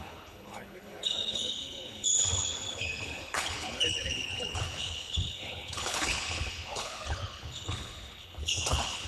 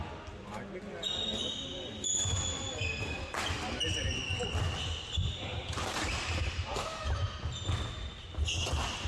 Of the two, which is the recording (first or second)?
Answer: second